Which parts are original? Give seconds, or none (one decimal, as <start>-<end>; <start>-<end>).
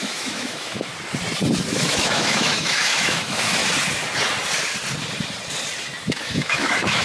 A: 0.9-1.7; 3.6-6.0